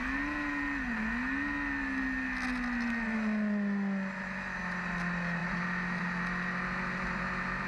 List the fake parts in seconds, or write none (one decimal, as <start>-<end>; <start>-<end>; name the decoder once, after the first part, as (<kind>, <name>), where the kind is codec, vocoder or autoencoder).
none